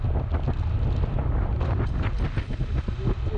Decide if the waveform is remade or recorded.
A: recorded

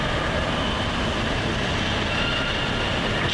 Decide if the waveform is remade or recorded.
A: recorded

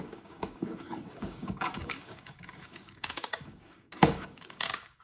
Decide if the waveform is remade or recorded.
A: remade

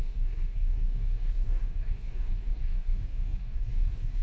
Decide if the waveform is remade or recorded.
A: remade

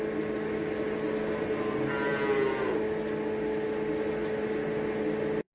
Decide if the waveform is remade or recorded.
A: recorded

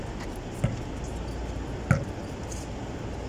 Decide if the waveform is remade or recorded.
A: recorded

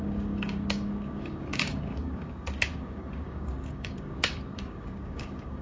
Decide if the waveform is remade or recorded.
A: remade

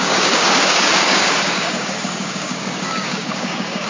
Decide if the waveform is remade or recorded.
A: remade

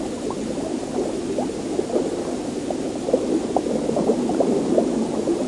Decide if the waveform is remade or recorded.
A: recorded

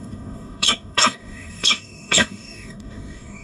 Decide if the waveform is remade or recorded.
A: remade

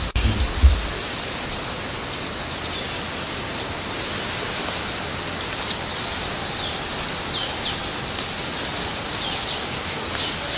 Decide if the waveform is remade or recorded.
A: recorded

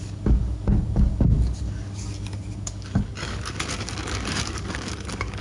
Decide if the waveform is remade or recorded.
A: remade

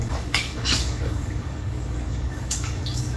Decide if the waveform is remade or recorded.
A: remade